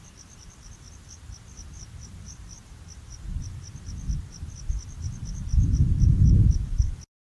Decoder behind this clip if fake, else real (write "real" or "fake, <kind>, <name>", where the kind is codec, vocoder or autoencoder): fake, vocoder, BigVGAN v2